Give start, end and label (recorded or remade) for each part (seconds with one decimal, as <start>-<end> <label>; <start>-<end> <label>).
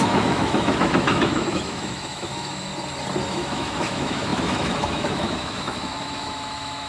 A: 0.0-2.7 remade; 2.7-3.3 recorded; 3.3-6.9 remade